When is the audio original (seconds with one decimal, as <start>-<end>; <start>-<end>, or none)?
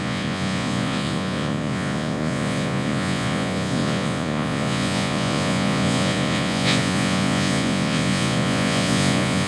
none